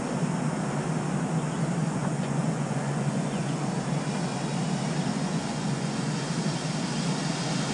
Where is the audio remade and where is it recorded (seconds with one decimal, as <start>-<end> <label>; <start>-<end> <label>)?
0.0-1.8 recorded; 1.8-3.6 remade; 3.6-5.1 recorded; 5.1-6.3 remade; 6.3-7.7 recorded